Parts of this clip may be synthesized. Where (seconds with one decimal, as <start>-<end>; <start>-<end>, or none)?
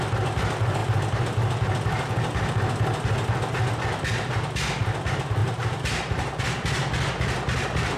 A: 5.4-6.4